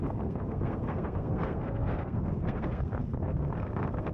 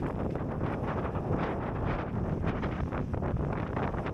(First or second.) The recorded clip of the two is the second